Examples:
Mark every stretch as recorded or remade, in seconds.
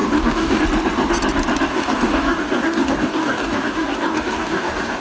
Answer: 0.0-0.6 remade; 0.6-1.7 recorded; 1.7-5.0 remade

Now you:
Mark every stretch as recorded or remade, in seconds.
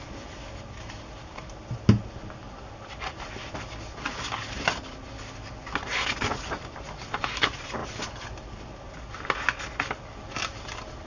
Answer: 0.0-11.1 recorded